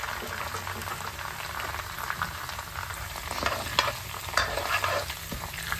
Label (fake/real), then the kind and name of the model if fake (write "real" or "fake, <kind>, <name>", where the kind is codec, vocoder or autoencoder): real